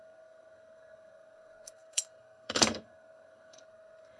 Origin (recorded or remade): remade